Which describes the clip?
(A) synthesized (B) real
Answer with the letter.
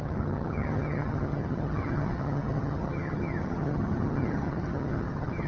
A